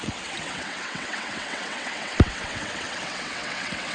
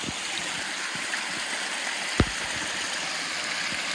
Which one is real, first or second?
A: second